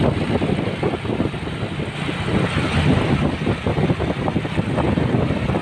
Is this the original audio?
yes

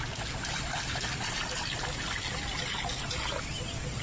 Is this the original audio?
yes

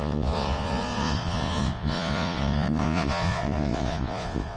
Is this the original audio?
no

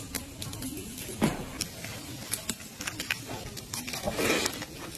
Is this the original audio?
yes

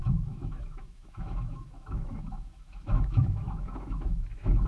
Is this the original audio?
no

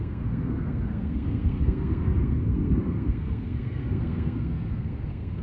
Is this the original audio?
no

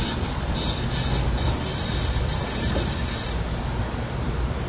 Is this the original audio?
yes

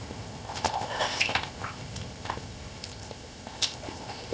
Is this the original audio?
no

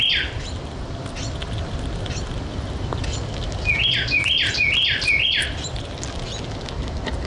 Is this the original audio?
yes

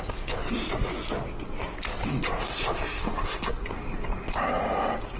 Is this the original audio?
yes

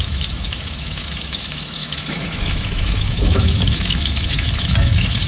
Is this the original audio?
no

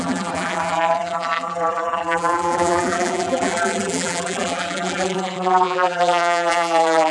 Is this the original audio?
no